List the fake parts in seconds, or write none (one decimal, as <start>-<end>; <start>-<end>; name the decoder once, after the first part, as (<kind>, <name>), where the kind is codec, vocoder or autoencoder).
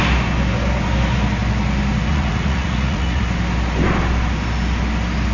2.1-3.2 (vocoder, Vocos)